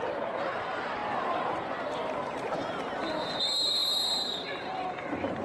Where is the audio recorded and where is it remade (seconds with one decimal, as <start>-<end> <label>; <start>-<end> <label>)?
0.0-5.4 remade